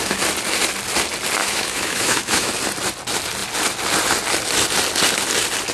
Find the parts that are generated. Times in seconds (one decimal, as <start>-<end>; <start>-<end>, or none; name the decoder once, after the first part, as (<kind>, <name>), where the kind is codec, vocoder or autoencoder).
1.4-2.5 (autoencoder, DAC-VAE)